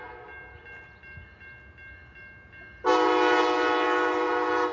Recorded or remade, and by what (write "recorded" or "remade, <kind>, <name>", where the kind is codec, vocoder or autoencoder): recorded